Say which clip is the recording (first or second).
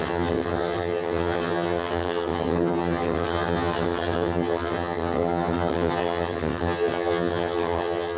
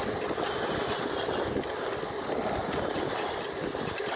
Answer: second